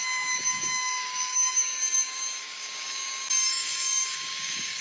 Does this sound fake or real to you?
fake